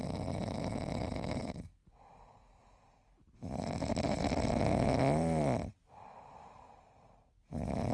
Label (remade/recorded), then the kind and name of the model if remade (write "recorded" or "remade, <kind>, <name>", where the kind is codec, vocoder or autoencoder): recorded